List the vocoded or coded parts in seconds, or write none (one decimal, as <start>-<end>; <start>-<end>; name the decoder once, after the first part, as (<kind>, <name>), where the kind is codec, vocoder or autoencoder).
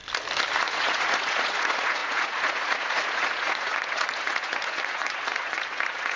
0.6-6.2 (vocoder, Vocos)